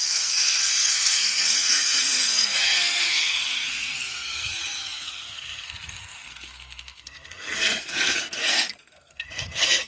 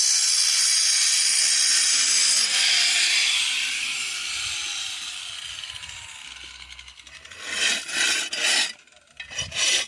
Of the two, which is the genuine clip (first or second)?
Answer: second